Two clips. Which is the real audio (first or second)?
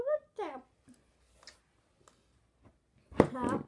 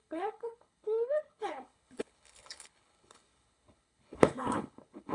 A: first